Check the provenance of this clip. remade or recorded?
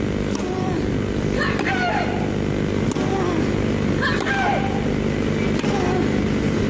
recorded